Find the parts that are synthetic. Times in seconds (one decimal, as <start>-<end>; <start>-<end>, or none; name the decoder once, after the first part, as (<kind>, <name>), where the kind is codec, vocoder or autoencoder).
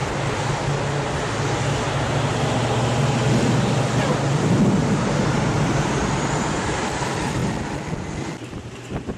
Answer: 3.8-7.4 (vocoder, BigVGAN v2); 8.5-9.2